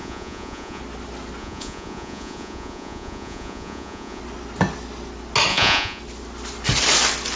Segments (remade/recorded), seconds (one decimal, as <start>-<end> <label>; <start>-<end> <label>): 0.0-0.8 remade; 0.8-1.4 recorded; 1.4-4.2 remade; 4.2-5.5 recorded; 5.5-6.0 remade; 6.0-7.4 recorded